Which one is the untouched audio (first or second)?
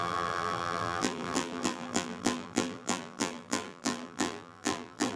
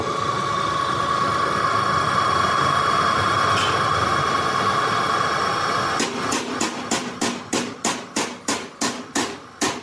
second